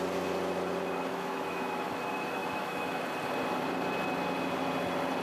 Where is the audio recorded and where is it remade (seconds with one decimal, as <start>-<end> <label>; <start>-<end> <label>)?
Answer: 0.0-1.1 recorded; 1.1-2.0 remade; 2.0-2.4 recorded; 2.4-3.0 remade; 3.0-5.2 recorded